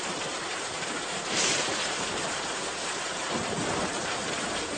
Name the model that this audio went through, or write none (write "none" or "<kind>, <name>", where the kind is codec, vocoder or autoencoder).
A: vocoder, BigVGAN v2